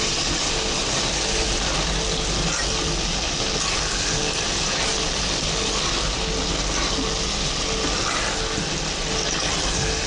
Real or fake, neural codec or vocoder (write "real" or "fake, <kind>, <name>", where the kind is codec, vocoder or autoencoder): real